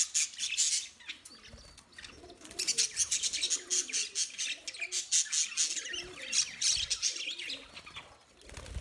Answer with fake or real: real